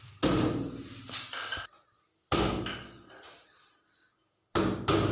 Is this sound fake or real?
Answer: real